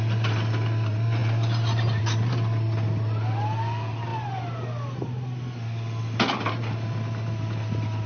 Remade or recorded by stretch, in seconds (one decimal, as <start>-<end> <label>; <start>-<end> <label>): 0.0-8.1 recorded